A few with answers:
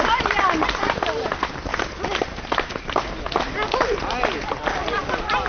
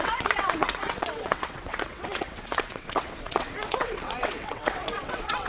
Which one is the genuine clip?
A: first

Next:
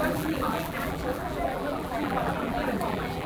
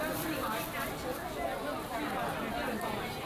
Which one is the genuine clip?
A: second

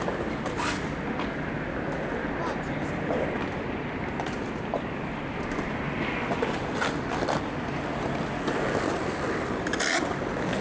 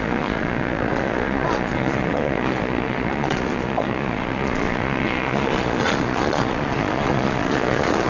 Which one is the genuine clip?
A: first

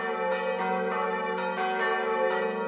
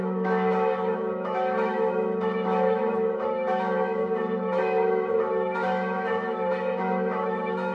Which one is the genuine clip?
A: first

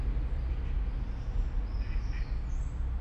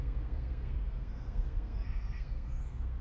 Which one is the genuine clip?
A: first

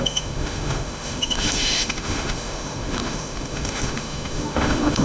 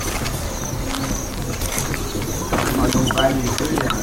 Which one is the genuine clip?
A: second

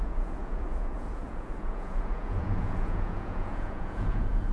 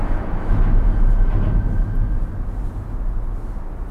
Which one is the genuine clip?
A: second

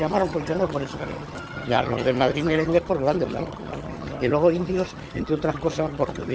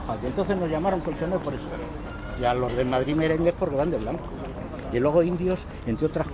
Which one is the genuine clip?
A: second